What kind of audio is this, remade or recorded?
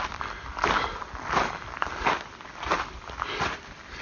recorded